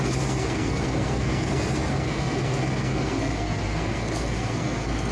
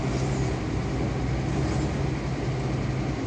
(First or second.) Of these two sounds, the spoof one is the first